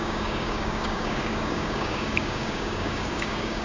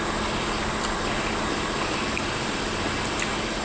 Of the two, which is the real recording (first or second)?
second